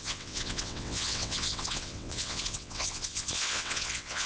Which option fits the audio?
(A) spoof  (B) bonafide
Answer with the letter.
A